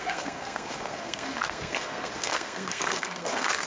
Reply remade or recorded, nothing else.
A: remade